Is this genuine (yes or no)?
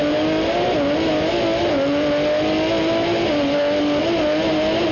yes